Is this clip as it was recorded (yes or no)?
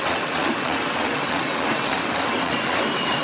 no